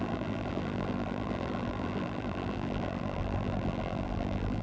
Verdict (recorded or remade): remade